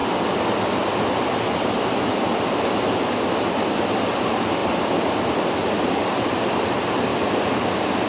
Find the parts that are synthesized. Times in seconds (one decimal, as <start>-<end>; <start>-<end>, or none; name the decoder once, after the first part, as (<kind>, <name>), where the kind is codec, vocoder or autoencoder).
none